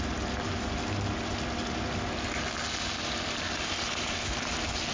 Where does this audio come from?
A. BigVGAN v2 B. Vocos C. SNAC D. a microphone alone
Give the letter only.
D